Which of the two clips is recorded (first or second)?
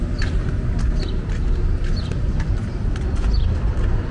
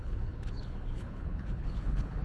first